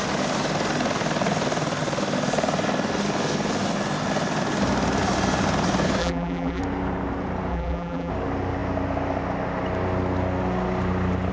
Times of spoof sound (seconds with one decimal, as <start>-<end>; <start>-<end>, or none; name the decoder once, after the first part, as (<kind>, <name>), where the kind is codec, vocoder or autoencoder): 6.0-6.6 (vocoder, BigVGAN v2); 7.5-8.1